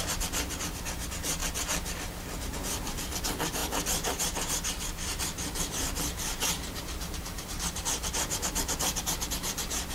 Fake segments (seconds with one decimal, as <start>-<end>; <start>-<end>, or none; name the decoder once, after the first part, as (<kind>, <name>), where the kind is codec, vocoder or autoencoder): 0.0-1.4 (vocoder, BigVGAN v2); 2.4-9.9